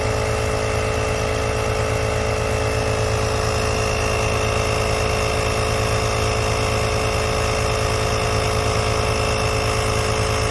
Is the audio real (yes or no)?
yes